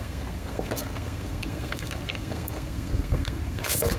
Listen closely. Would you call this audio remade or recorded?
remade